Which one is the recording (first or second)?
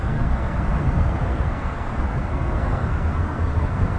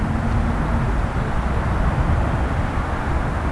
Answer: second